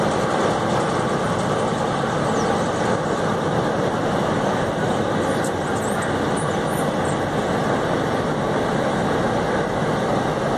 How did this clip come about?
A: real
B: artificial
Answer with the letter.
A